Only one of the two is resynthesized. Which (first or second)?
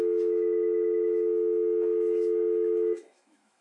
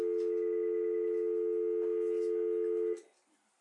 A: first